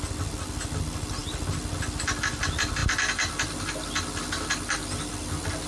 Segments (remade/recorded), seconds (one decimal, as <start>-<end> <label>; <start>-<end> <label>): 0.0-5.7 recorded

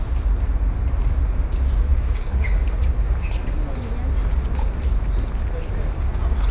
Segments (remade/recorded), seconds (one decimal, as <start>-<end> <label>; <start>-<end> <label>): 0.0-1.9 recorded; 1.9-2.6 remade; 2.6-6.5 recorded

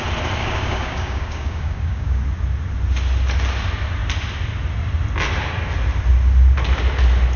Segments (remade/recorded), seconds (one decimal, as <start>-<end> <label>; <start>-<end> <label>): 0.0-0.4 recorded; 0.4-2.2 remade; 2.2-7.4 recorded

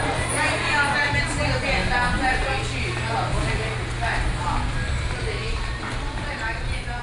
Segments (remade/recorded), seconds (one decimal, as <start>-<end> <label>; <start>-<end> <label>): 0.0-7.0 recorded

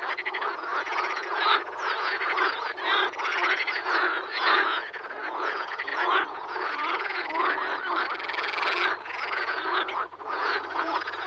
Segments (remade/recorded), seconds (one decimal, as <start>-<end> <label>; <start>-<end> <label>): 0.0-7.4 remade; 7.4-9.0 recorded; 9.0-11.3 remade